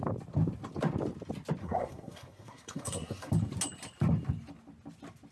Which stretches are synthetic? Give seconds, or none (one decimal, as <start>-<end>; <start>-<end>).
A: 1.6-3.3